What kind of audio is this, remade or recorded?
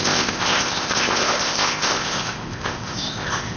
remade